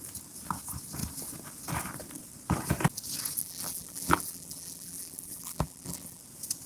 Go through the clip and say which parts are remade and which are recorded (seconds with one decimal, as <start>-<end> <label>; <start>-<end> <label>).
0.0-3.4 recorded; 3.4-6.2 remade; 6.2-6.7 recorded